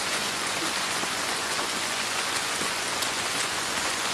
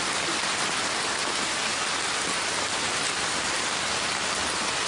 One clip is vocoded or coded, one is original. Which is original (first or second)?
second